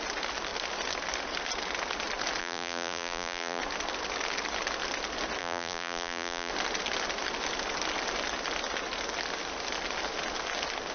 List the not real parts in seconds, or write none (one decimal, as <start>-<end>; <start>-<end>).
2.4-3.6; 5.4-6.5